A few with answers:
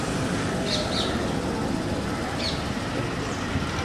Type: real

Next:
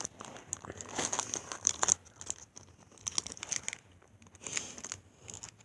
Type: real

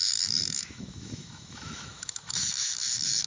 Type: fake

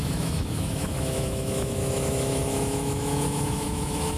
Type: fake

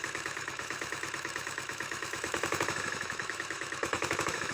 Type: fake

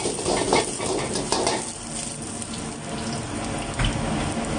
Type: real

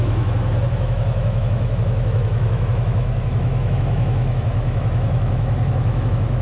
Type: fake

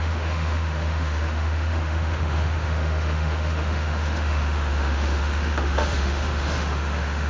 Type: fake